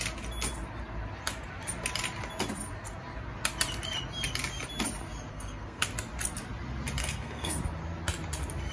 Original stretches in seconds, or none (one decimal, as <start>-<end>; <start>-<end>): 0.0-5.3; 5.9-7.0; 7.6-8.7

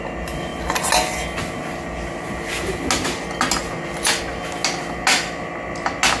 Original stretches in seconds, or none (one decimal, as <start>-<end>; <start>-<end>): 0.0-6.2

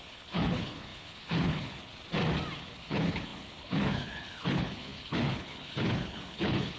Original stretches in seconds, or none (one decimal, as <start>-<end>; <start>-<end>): 1.9-2.6

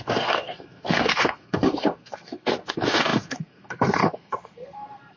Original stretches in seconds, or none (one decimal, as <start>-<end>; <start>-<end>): none

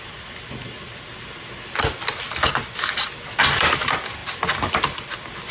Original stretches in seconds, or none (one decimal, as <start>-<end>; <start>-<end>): 0.0-5.5

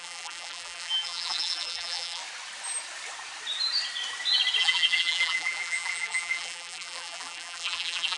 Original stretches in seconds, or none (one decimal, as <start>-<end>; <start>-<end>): 2.2-4.6

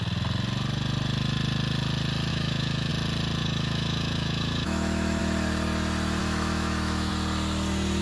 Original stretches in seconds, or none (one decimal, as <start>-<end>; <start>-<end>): 0.0-2.3; 2.9-3.4; 5.2-6.2; 7.1-8.0

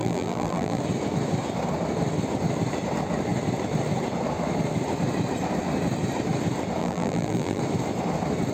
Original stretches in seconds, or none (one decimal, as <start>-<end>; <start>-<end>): 0.8-6.8; 7.6-8.5